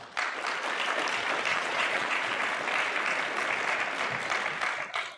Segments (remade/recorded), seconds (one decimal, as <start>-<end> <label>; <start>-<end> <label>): 0.0-1.5 recorded; 1.5-2.4 remade; 2.4-5.2 recorded